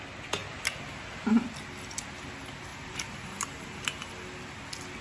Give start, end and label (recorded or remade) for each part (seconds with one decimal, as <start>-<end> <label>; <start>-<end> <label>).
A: 0.0-2.7 recorded; 2.7-4.1 remade; 4.1-5.0 recorded